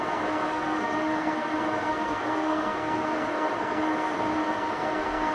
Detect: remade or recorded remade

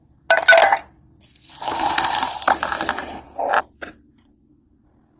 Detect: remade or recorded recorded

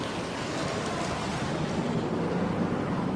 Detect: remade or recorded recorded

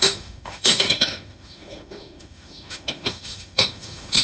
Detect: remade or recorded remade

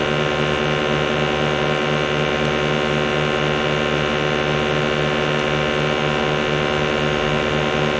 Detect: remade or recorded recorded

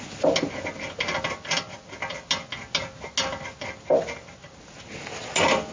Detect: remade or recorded recorded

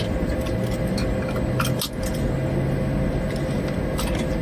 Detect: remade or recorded recorded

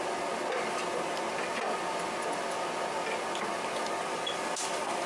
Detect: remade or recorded recorded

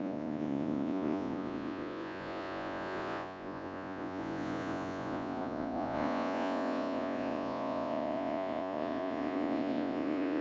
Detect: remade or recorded remade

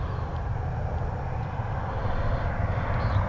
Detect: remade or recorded recorded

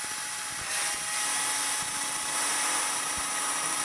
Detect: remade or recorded recorded